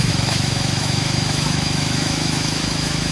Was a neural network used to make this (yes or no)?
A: yes